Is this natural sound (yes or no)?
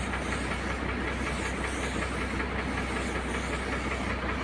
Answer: yes